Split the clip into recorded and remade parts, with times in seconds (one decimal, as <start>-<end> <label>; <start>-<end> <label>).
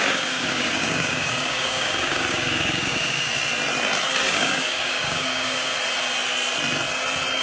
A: 0.0-3.3 remade; 3.3-4.3 recorded; 4.3-5.7 remade; 5.7-7.4 recorded